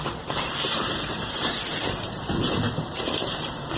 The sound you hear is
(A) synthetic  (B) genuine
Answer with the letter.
A